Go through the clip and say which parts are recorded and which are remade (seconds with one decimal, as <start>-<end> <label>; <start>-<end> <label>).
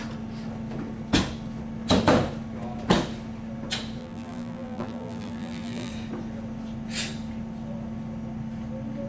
0.0-4.0 recorded; 4.0-5.9 remade; 5.9-9.1 recorded